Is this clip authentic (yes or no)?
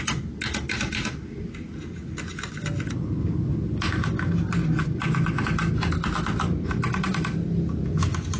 yes